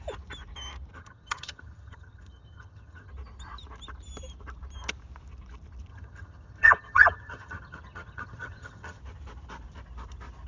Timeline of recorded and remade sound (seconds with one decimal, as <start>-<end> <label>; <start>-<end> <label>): 0.0-0.9 recorded; 0.9-3.1 remade; 3.1-5.9 recorded; 5.9-9.0 remade; 9.0-10.5 recorded